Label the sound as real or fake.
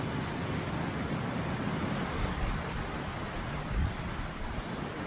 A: real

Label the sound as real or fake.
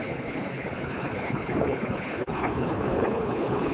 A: fake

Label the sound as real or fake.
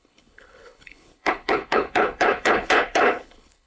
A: fake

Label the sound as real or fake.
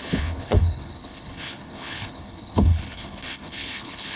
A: fake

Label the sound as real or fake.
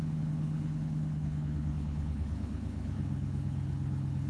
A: fake